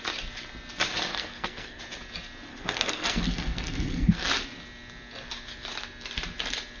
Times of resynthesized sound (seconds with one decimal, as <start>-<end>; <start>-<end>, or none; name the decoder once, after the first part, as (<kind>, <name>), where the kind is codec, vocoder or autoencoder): 1.1-1.8 (codec, SNAC); 2.5-4.3